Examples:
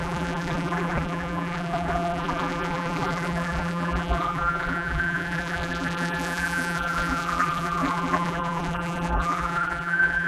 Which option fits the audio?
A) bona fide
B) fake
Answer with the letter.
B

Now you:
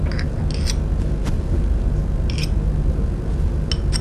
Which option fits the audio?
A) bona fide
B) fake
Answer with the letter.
A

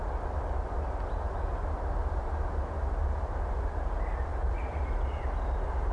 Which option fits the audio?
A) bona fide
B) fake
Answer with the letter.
A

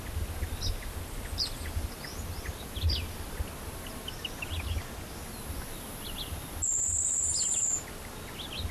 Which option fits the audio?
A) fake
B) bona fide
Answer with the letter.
B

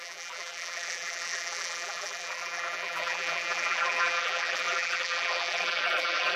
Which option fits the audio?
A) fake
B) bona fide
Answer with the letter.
A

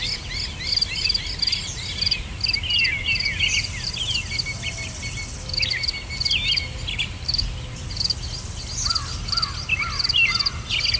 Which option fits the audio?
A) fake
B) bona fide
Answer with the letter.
B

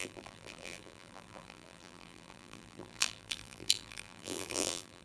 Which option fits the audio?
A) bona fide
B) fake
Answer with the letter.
B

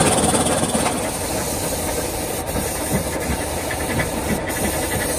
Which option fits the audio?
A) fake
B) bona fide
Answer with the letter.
A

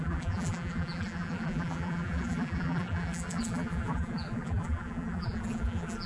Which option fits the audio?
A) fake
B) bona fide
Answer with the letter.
A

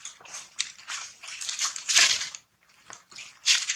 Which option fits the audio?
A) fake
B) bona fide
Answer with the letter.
A